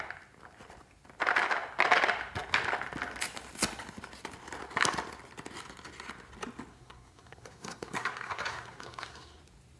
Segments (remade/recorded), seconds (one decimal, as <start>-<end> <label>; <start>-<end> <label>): 0.0-6.7 recorded; 6.7-9.4 remade; 9.4-9.8 recorded